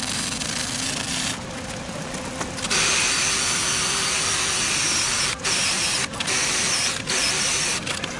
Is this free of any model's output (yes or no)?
yes